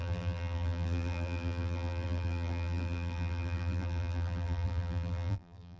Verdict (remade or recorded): remade